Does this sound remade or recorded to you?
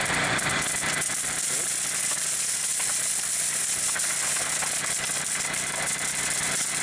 remade